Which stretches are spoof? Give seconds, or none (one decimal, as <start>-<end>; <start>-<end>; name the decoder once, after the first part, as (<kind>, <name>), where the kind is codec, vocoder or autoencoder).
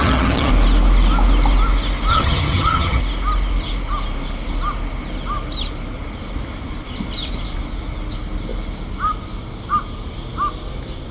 0.0-0.5 (vocoder, HiFi-GAN); 2.1-3.0